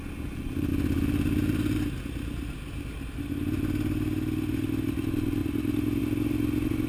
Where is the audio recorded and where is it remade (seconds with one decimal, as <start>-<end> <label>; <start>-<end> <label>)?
0.0-6.9 recorded